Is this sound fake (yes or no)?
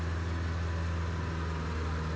no